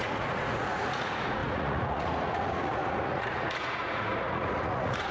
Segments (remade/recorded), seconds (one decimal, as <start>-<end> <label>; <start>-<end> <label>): 0.0-5.1 remade